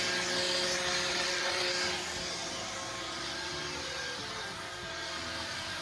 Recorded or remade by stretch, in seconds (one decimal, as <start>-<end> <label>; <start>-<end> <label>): 0.0-1.1 recorded; 1.1-1.6 remade; 1.6-5.8 recorded